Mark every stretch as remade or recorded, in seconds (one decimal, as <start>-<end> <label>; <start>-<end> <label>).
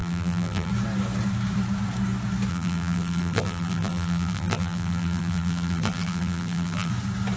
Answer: 0.0-0.7 remade; 0.7-2.5 recorded; 2.5-6.9 remade; 6.9-7.4 recorded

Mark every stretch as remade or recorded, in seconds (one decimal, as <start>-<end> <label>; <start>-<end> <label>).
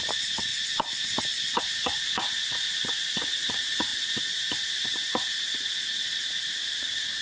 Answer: 0.0-0.5 remade; 0.5-1.6 recorded; 1.6-3.9 remade; 3.9-6.3 recorded; 6.3-7.2 remade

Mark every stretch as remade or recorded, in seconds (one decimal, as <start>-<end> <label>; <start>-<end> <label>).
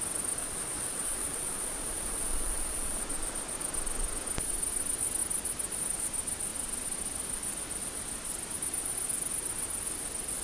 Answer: 0.0-0.4 recorded; 0.4-3.0 remade; 3.0-10.4 recorded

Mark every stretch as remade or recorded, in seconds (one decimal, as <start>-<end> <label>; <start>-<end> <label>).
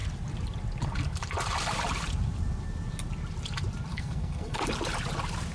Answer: 0.0-3.9 recorded; 3.9-4.6 remade; 4.6-5.5 recorded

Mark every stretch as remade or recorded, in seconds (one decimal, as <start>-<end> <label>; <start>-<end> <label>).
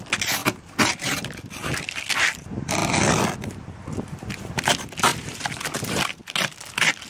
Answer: 0.0-0.4 recorded; 0.4-1.3 remade; 1.3-5.1 recorded; 5.1-6.3 remade; 6.3-7.1 recorded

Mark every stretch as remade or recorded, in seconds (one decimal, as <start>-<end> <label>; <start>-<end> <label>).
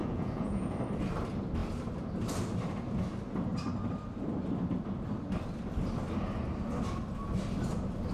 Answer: 0.0-0.7 remade; 0.7-8.1 recorded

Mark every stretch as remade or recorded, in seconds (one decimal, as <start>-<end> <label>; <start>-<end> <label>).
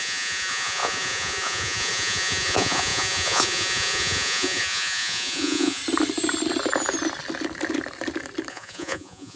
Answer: 0.0-5.8 remade; 5.8-8.5 recorded; 8.5-9.4 remade